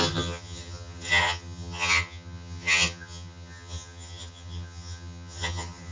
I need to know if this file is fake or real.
fake